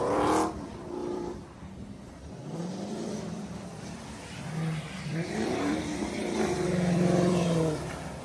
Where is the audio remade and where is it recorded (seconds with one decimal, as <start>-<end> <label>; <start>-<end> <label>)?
0.0-8.2 remade